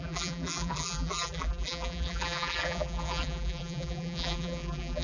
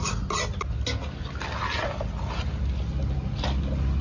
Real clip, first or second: second